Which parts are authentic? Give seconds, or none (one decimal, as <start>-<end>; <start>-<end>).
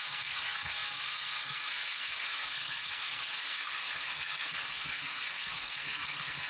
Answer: none